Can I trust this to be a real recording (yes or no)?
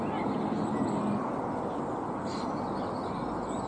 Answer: yes